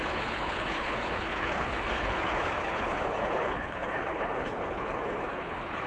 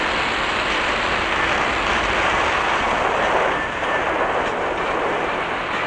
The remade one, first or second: first